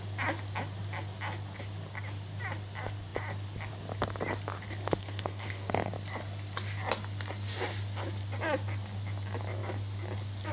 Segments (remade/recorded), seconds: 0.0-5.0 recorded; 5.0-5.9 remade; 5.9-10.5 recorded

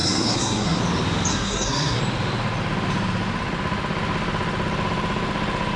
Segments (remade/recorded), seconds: 0.0-0.8 remade; 0.8-1.3 recorded; 1.3-2.0 remade; 2.0-5.8 recorded

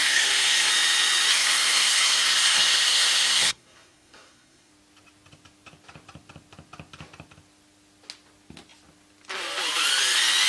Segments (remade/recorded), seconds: 0.0-0.7 remade; 0.7-1.3 recorded; 1.3-4.7 remade; 4.7-10.5 recorded

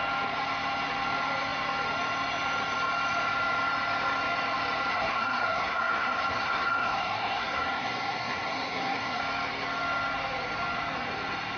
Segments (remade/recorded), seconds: 0.0-4.9 recorded; 4.9-9.2 remade; 9.2-11.6 recorded

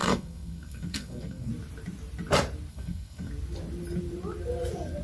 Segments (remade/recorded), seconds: 0.0-1.5 remade; 1.5-2.7 recorded; 2.7-3.3 remade; 3.3-5.0 recorded

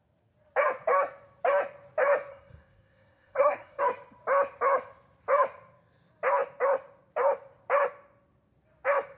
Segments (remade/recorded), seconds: 0.0-2.3 recorded; 2.3-3.8 remade; 3.8-9.2 recorded